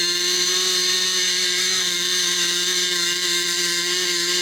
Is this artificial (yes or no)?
yes